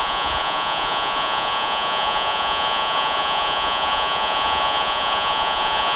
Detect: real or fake fake